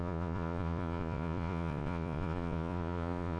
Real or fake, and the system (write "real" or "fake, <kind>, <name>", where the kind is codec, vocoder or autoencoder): fake, vocoder, Vocos